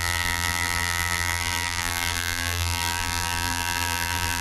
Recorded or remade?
remade